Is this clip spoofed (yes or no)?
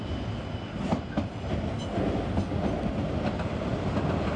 no